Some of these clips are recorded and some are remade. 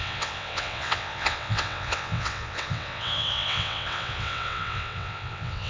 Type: remade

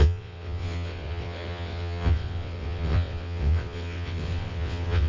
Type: remade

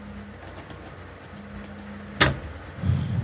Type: recorded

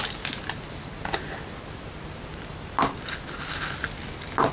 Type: recorded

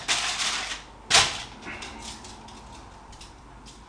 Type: recorded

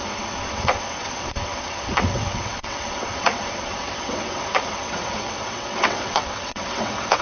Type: remade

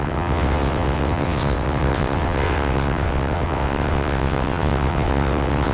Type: remade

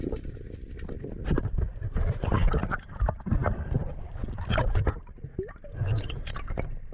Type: recorded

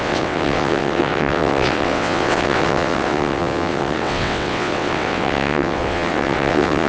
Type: remade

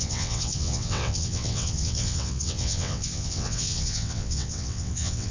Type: remade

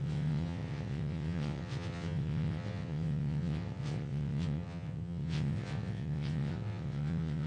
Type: remade